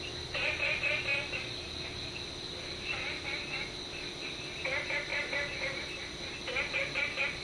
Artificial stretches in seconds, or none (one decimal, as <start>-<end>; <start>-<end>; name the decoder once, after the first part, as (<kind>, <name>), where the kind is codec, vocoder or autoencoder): none